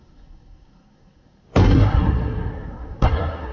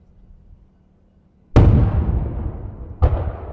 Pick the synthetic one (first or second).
first